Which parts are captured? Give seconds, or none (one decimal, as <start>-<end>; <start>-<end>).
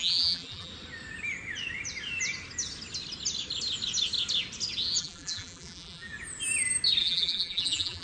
0.7-5.0; 6.1-7.0